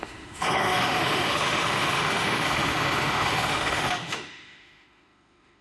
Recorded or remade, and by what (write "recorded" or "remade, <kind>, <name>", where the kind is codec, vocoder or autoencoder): remade, autoencoder, DAC-VAE